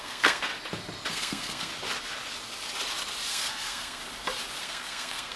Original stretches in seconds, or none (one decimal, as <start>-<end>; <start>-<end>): 0.5-1.1; 1.7-3.3; 4.0-4.6